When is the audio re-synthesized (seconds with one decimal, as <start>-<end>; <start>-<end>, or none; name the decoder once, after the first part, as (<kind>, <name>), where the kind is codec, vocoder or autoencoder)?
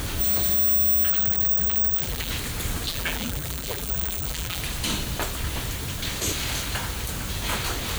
1.1-2.3 (vocoder, BigVGAN v2); 2.9-4.6